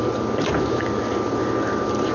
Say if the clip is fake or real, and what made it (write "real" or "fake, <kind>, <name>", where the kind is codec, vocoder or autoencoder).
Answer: real